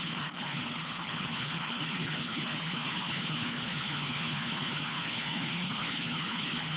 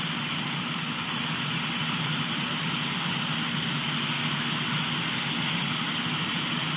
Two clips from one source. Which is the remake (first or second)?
first